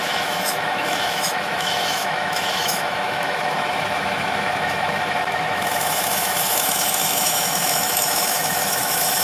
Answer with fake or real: fake